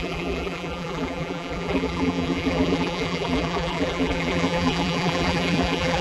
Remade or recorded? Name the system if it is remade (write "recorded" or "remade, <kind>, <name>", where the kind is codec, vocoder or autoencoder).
remade, vocoder, BigVGAN v2